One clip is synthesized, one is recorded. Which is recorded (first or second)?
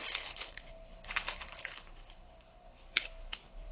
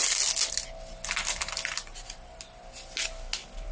second